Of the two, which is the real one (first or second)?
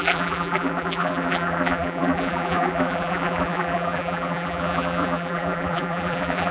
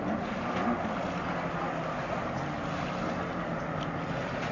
second